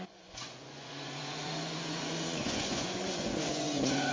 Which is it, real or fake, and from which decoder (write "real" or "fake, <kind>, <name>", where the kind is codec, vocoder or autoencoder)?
fake, vocoder, Vocos